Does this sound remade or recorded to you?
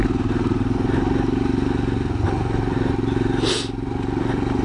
recorded